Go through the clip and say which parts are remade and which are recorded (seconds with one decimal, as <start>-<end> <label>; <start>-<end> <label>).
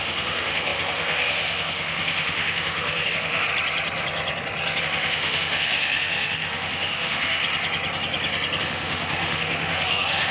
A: 0.0-3.5 remade; 3.5-4.8 recorded; 4.8-7.4 remade; 7.4-8.6 recorded; 8.6-10.3 remade